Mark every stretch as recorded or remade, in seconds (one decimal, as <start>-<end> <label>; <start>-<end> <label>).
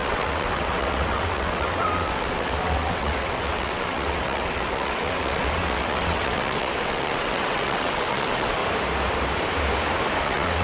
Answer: 0.0-8.6 remade; 8.6-10.2 recorded; 10.2-10.6 remade